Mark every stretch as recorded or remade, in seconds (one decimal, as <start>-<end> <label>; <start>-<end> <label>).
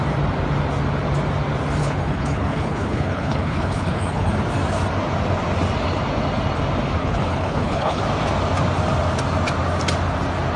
0.0-1.8 recorded; 1.8-4.3 remade; 4.3-7.0 recorded; 7.0-8.0 remade; 8.0-10.6 recorded